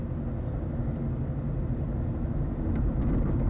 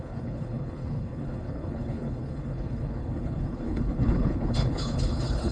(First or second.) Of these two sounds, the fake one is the second